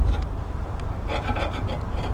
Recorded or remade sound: recorded